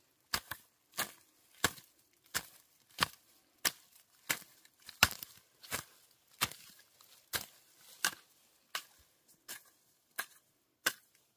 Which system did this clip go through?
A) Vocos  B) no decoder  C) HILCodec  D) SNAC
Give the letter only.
B